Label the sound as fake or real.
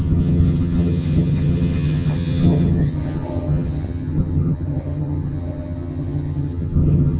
fake